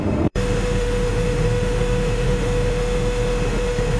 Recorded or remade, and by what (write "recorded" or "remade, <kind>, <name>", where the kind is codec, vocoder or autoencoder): remade, autoencoder, DAC-VAE